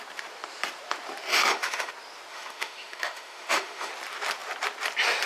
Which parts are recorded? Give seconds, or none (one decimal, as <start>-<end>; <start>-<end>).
0.0-1.3; 1.9-2.3; 3.9-5.3